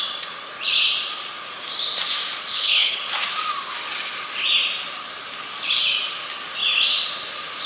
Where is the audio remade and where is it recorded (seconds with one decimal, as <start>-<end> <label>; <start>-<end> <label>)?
0.0-2.5 recorded; 2.5-3.0 remade; 3.0-7.7 recorded